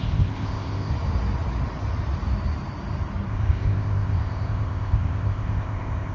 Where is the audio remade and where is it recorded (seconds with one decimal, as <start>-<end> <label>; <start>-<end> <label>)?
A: 0.0-0.9 remade; 0.9-3.3 recorded; 3.3-6.1 remade